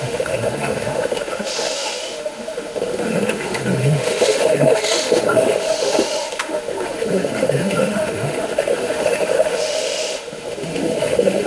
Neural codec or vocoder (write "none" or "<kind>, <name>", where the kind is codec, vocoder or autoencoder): autoencoder, DAC-VAE